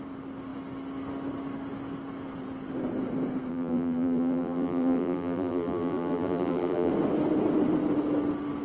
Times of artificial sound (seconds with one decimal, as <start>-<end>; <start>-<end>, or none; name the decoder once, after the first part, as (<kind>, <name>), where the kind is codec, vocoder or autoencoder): 3.5-6.9 (vocoder, BigVGAN v2)